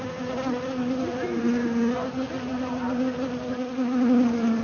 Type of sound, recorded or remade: recorded